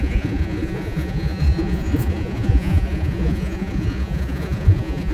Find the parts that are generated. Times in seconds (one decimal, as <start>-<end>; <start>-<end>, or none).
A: 0.0-5.1